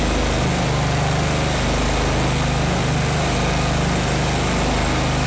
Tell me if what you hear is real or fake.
real